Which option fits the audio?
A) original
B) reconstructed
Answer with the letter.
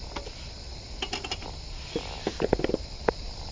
A